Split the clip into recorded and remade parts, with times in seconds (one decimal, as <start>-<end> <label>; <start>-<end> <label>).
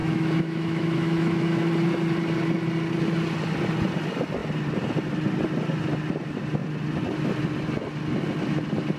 0.0-1.7 remade; 1.7-9.0 recorded